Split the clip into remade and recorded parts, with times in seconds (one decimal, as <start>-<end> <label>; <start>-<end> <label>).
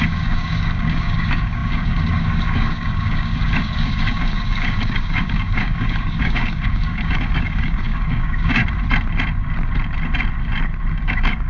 0.0-8.6 remade; 8.6-10.9 recorded; 10.9-11.5 remade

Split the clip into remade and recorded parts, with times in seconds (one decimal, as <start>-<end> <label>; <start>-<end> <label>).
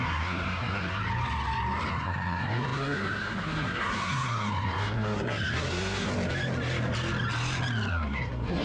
0.0-1.0 remade; 1.0-1.9 recorded; 1.9-6.1 remade; 6.1-7.9 recorded; 7.9-8.6 remade